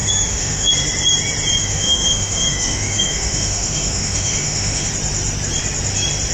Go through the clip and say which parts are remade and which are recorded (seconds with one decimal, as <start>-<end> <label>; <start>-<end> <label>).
0.0-0.7 remade; 0.7-1.6 recorded; 1.6-4.9 remade; 4.9-6.3 recorded